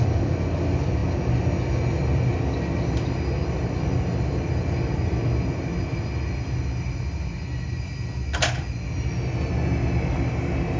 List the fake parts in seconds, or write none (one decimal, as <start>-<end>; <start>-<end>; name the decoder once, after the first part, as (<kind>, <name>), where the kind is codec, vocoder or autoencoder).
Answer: none